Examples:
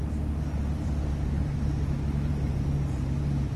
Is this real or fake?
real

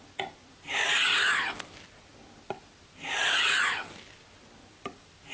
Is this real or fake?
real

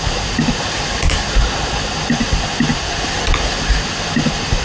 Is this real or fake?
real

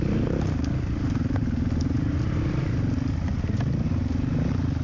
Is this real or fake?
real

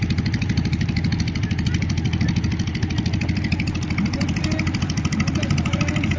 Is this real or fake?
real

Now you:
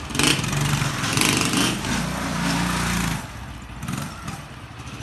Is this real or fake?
real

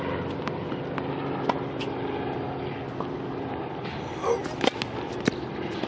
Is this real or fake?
real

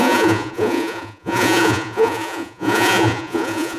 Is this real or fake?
fake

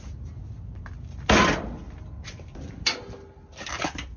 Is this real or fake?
real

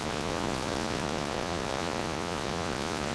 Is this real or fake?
fake